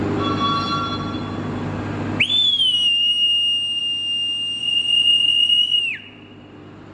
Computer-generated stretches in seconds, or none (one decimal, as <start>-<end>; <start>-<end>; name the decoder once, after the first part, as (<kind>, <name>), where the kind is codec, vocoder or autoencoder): 4.6-5.8 (vocoder, Vocos)